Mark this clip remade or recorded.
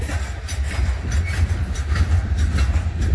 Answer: recorded